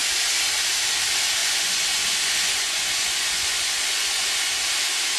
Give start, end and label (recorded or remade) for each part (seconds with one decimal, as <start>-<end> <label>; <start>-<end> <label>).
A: 0.0-1.4 recorded; 1.4-4.5 remade; 4.5-5.2 recorded